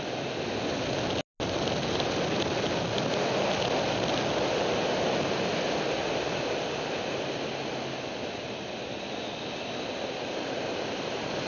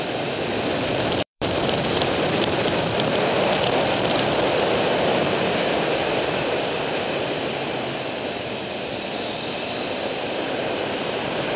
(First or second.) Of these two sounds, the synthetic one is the second